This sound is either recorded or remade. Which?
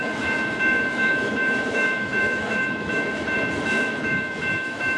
remade